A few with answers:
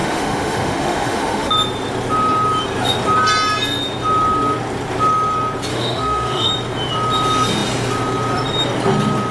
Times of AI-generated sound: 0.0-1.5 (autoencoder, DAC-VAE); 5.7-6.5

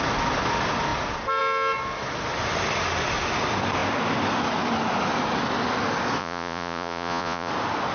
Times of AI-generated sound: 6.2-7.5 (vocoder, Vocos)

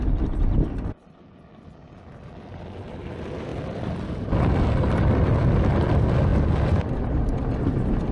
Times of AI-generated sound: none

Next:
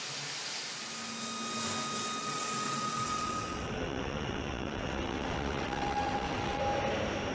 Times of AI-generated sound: 2.2-6.6 (vocoder, WaveNeXt)

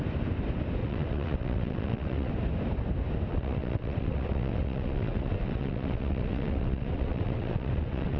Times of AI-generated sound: 0.8-2.3 (vocoder, WaveNeXt); 3.3-8.2